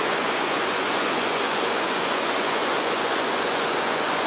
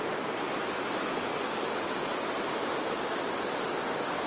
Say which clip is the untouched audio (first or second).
second